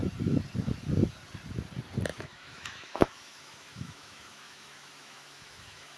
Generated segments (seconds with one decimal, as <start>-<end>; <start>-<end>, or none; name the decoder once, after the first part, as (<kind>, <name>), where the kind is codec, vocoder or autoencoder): 2.1-6.0 (autoencoder, DAC-VAE)